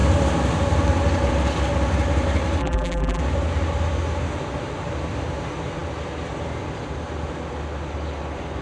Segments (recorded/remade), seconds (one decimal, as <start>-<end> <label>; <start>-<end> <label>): 0.0-2.6 recorded; 2.6-3.2 remade; 3.2-8.6 recorded